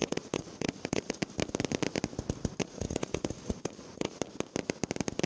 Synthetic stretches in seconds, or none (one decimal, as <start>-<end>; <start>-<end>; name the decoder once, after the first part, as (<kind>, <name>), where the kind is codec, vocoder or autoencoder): 0.0-1.2 (vocoder, Vocos); 2.6-4.2